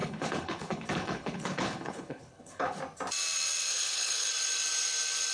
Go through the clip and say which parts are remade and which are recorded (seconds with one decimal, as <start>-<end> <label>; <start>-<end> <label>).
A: 0.0-2.8 remade; 2.8-3.7 recorded; 3.7-4.3 remade; 4.3-5.3 recorded